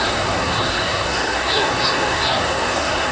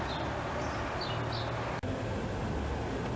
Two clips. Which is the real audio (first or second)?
second